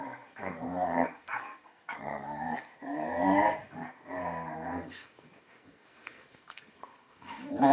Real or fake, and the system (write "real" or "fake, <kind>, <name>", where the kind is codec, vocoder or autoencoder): fake, codec, SNAC